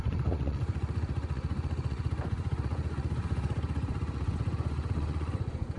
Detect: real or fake fake